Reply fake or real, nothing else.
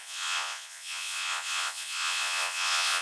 fake